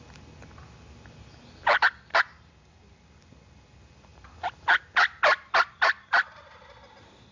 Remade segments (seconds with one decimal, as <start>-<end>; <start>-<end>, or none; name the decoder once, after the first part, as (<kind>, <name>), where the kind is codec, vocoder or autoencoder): none